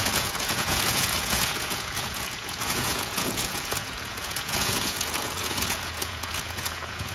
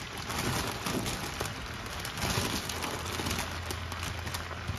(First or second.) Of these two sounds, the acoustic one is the second